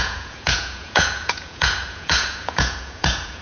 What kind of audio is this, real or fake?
fake